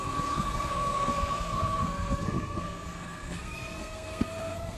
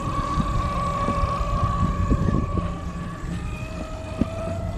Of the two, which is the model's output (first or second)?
first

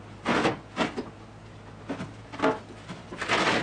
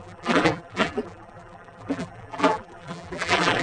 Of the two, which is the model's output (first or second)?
second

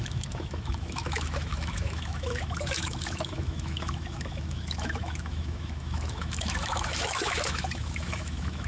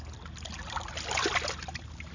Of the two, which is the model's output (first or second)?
first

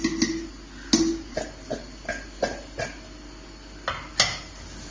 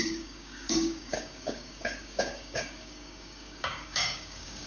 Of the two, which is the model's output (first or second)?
second